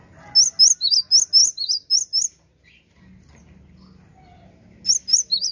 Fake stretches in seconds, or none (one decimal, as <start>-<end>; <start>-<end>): none